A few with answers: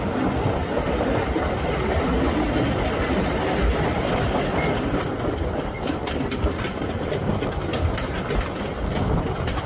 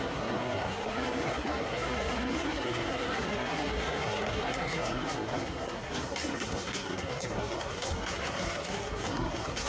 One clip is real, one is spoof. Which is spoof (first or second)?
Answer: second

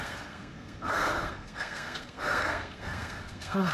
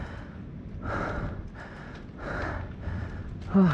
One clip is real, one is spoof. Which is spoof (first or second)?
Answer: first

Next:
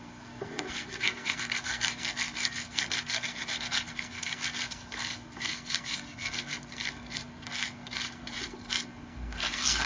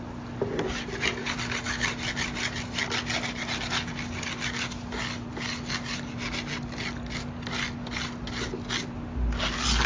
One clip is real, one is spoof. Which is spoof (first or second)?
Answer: first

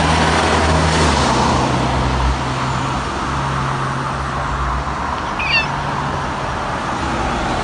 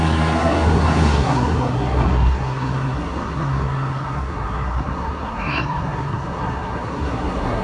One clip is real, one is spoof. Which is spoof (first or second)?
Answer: second